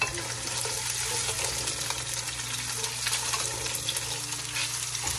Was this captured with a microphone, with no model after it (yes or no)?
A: yes